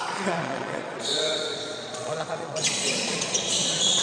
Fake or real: fake